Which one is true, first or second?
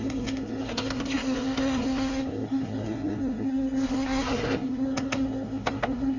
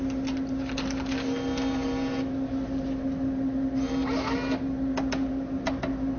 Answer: second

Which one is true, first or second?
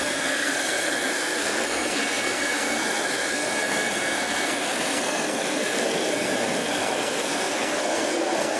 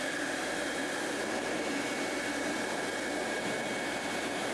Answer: second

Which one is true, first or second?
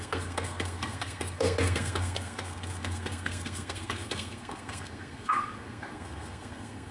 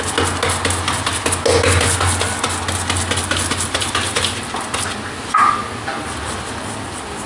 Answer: second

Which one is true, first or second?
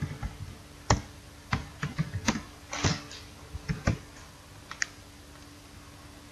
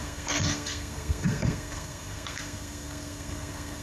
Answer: first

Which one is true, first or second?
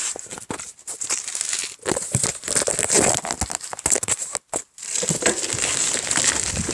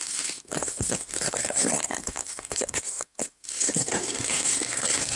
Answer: first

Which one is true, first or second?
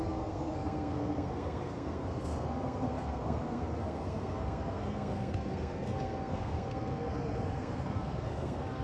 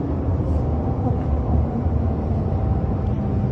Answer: second